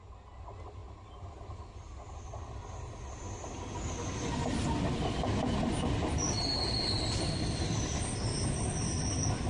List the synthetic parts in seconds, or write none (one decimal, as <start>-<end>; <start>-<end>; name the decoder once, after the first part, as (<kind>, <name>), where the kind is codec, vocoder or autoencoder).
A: none